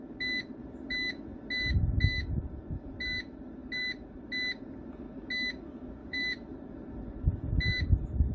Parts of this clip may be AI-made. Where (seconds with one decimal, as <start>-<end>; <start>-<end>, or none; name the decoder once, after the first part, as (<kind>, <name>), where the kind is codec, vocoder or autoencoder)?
6.0-6.9 (vocoder, BigVGAN v2)

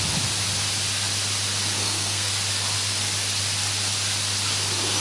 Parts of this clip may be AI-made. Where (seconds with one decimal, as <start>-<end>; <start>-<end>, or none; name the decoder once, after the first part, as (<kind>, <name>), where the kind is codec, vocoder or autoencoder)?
1.8-2.3 (codec, SNAC)